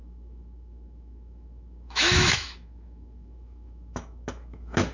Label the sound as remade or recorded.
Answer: remade